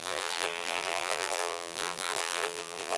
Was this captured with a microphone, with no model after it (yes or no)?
no